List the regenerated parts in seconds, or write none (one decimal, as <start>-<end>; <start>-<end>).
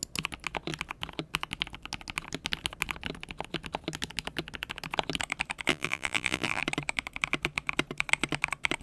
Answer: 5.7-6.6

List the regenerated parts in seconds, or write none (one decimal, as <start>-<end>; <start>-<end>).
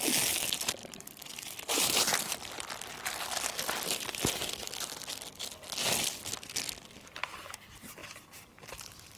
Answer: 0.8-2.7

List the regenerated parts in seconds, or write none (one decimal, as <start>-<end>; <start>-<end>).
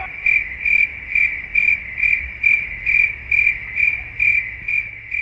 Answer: 0.9-3.1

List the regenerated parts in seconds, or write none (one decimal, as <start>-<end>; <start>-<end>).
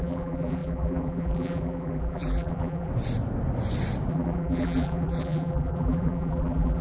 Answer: 0.0-2.9; 4.1-6.8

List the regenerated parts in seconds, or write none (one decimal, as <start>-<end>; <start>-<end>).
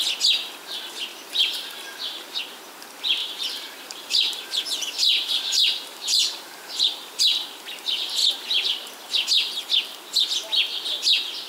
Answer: 1.1-2.4; 3.2-7.2